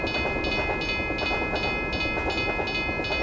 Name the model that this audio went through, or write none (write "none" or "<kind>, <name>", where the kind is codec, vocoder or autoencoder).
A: none